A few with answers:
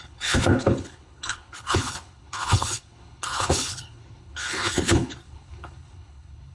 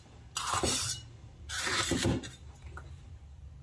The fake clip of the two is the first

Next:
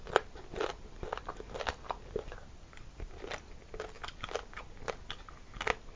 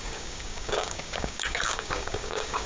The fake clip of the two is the second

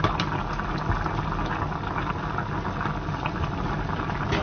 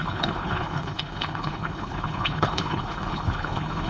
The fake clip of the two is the second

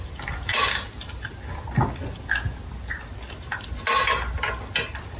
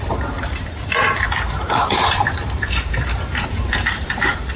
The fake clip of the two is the second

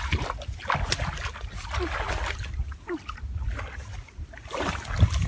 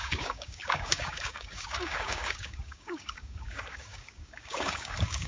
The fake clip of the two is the second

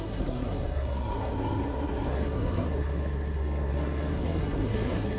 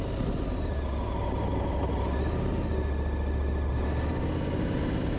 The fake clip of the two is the first